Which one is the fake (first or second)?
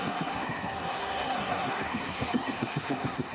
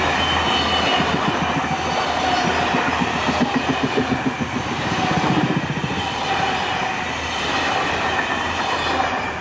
first